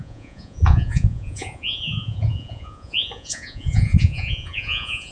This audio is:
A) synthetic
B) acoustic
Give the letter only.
A